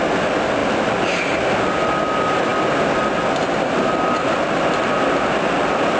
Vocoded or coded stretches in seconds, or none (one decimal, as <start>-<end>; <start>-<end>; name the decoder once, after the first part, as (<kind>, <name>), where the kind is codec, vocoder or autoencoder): none